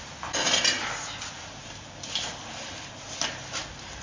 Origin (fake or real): real